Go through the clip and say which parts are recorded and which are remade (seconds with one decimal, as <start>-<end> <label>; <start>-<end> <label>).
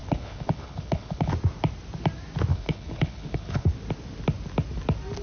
0.0-1.3 remade; 1.3-2.5 recorded; 2.5-3.7 remade; 3.7-5.2 recorded